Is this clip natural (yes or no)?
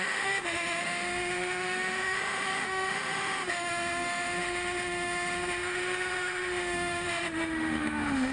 no